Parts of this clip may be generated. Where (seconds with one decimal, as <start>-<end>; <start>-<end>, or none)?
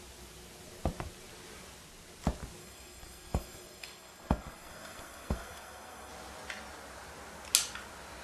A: 2.6-6.1